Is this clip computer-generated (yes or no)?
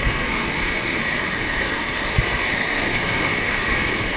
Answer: yes